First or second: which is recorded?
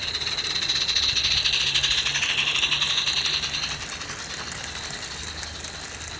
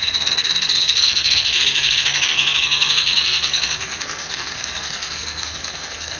first